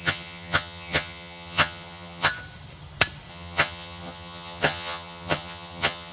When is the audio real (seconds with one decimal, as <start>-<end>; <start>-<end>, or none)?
2.3-3.3